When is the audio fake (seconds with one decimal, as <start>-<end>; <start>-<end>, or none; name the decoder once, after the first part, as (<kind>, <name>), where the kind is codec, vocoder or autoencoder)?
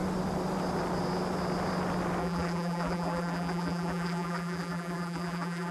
2.2-5.7 (vocoder, BigVGAN v2)